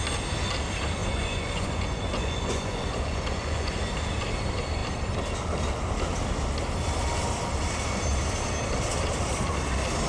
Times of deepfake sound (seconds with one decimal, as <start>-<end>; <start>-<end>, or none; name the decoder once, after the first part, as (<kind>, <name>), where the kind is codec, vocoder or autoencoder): 1.0-3.9 (vocoder, Vocos)